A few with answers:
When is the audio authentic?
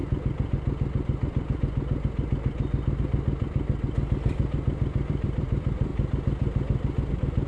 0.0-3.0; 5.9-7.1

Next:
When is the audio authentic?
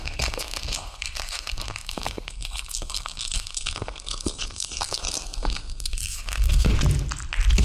6.7-7.6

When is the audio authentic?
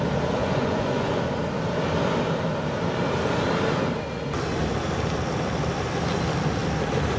0.0-0.4; 1.2-7.2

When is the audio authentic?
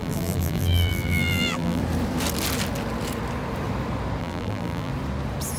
1.8-4.2; 4.9-5.6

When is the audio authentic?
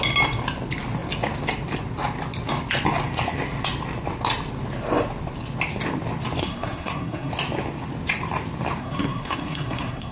0.0-6.4; 7.3-8.8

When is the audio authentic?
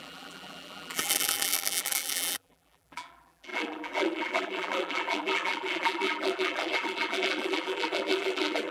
none